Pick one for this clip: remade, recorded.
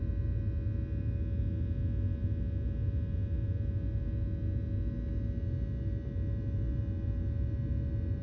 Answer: recorded